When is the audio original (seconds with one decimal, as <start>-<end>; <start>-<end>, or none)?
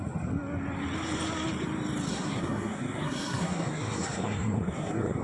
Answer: 0.0-2.1